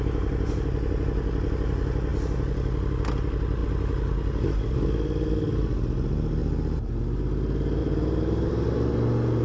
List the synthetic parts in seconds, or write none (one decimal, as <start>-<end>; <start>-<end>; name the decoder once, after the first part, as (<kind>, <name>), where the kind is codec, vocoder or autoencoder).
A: 7.8-8.5 (vocoder, BigVGAN v2)